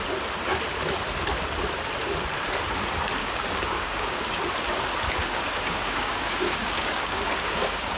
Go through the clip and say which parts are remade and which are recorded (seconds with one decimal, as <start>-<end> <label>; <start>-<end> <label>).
0.0-3.2 recorded; 3.2-4.4 remade; 4.4-5.2 recorded; 5.2-8.0 remade